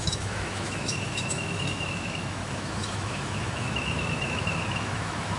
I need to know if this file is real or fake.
fake